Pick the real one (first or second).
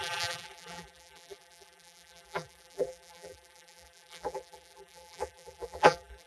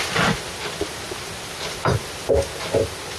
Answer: second